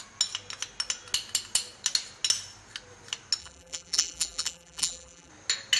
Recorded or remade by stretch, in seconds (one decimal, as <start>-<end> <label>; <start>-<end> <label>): 0.0-3.4 recorded; 3.4-5.3 remade; 5.3-5.8 recorded